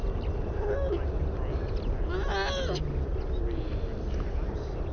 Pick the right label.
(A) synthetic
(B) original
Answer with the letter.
B